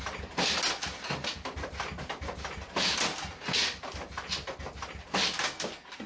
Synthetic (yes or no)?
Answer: no